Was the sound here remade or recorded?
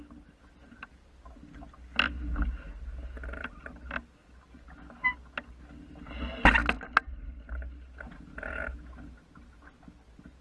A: recorded